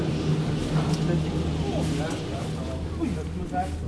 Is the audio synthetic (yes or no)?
no